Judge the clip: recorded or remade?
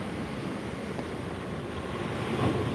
recorded